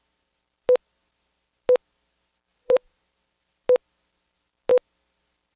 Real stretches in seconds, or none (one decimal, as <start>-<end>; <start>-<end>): 0.0-2.5; 3.0-5.6